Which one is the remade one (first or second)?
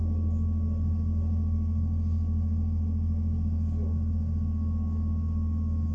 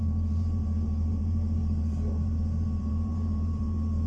second